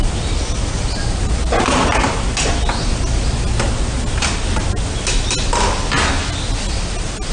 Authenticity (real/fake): real